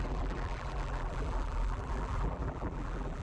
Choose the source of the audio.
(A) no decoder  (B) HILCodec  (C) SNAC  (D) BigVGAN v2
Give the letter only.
D